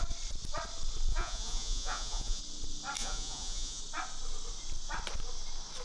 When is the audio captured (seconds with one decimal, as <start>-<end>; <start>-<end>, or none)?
0.0-1.1; 2.4-3.0; 3.8-5.8